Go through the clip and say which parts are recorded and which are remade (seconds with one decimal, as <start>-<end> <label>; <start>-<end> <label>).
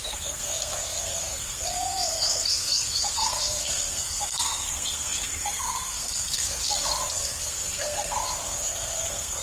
0.0-6.6 remade; 6.6-7.1 recorded; 7.1-9.4 remade